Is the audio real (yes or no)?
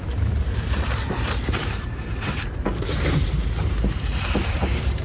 no